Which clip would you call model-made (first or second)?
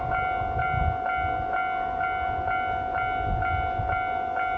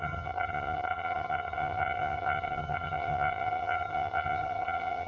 second